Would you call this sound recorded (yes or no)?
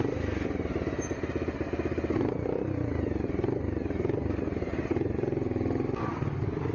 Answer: yes